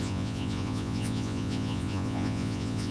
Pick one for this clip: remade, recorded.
remade